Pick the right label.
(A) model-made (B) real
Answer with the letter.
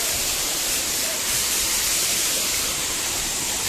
A